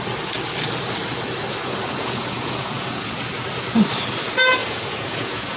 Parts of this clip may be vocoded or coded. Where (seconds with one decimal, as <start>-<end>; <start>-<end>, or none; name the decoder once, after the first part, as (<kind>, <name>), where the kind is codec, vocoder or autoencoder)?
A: 1.6-3.1 (vocoder, Vocos); 4.6-5.6